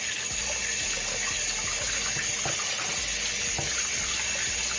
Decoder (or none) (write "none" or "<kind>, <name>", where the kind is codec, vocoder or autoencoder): none